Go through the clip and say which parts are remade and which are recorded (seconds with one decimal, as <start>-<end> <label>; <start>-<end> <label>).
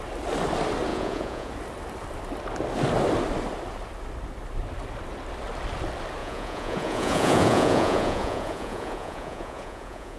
0.0-0.9 recorded; 0.9-1.5 remade; 1.5-6.2 recorded; 6.2-10.2 remade